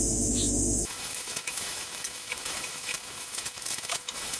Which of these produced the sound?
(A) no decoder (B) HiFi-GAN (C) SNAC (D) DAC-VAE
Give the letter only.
D